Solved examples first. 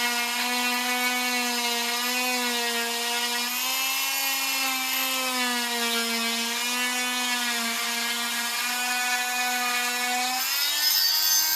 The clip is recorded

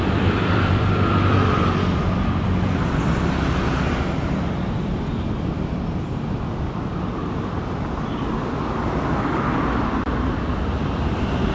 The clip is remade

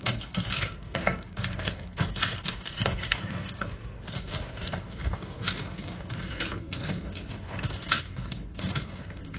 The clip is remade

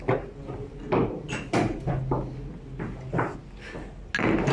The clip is recorded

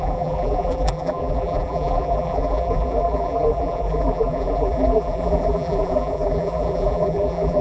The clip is remade